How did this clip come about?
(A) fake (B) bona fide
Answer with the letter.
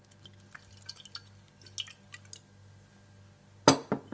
B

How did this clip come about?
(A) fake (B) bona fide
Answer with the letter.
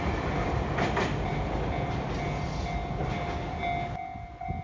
B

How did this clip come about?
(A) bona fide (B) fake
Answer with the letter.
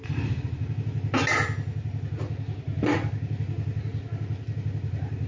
A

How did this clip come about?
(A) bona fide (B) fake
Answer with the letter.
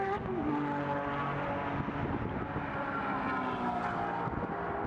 A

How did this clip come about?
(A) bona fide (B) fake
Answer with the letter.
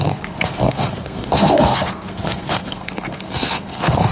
B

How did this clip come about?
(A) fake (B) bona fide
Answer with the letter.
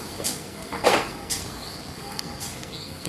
A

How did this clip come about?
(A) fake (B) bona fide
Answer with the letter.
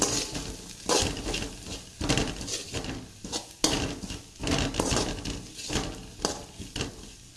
B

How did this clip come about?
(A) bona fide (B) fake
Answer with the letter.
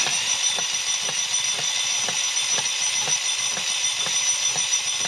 A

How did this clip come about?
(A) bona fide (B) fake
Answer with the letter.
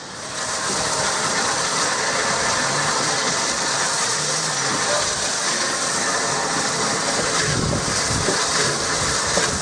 A